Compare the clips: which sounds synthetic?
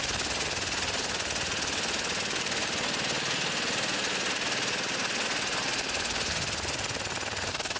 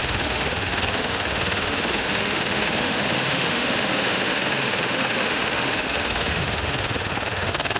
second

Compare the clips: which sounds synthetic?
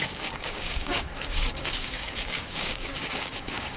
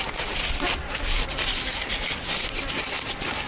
first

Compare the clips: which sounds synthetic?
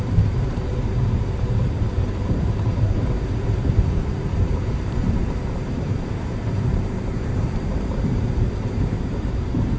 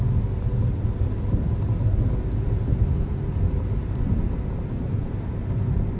first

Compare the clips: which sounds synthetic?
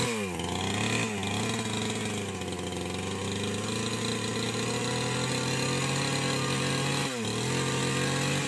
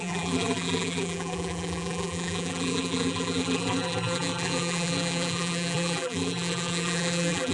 second